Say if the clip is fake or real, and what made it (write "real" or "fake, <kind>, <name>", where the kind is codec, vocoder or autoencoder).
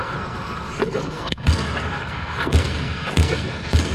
fake, codec, SNAC